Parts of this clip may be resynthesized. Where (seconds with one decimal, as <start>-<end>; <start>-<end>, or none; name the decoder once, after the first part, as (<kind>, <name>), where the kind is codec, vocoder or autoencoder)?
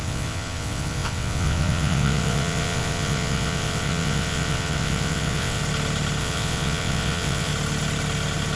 0.0-5.6 (vocoder, WaveNeXt); 6.2-7.5